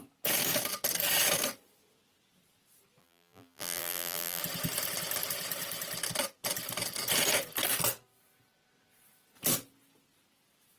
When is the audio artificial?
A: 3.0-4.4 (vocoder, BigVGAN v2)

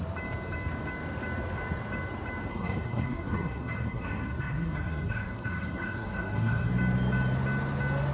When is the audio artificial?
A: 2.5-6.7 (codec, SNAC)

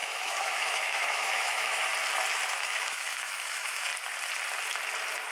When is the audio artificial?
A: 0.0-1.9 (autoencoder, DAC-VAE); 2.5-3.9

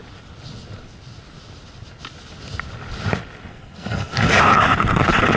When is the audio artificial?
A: 3.5-4.4 (codec, SNAC)